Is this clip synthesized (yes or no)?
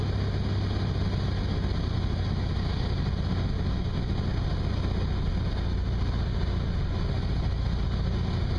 no